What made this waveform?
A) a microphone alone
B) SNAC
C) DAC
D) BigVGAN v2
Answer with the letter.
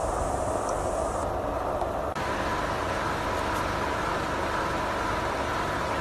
D